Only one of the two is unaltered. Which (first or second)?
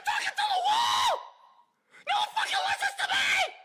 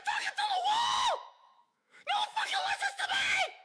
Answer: first